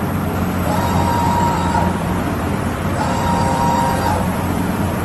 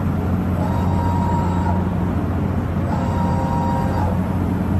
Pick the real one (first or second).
second